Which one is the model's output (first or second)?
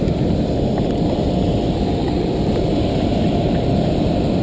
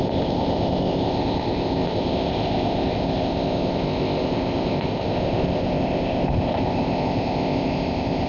second